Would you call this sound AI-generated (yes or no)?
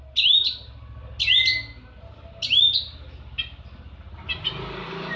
no